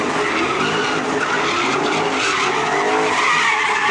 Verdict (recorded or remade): recorded